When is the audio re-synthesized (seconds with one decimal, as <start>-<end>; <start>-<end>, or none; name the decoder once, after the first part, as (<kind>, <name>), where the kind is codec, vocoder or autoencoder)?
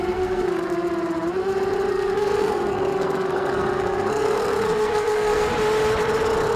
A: 0.0-0.7 (codec, SNAC); 1.9-5.5